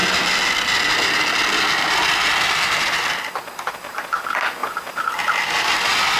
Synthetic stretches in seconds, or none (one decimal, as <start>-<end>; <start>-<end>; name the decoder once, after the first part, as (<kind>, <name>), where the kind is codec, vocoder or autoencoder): none